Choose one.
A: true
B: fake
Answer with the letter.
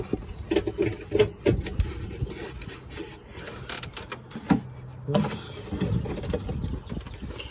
A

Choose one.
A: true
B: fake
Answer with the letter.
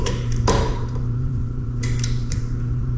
B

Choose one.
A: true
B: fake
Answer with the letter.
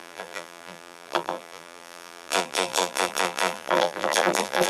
B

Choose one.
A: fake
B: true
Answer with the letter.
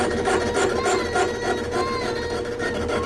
B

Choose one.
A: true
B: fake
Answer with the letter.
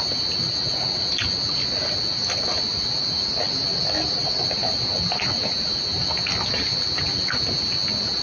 A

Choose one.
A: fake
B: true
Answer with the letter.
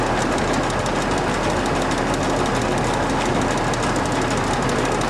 B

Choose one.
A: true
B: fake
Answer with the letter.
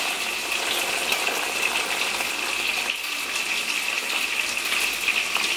A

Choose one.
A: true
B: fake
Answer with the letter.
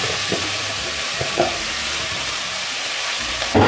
B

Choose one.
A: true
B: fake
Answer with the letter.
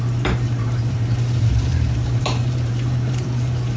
B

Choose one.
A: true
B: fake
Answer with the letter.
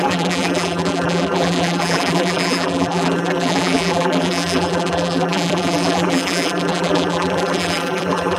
B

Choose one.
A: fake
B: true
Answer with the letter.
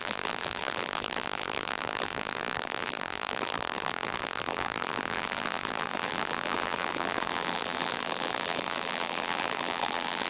A